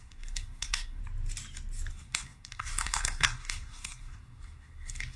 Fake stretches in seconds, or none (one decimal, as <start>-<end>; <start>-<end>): 0.0-1.0; 1.9-5.2